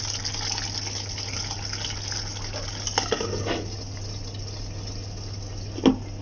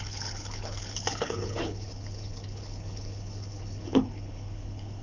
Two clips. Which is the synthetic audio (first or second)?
second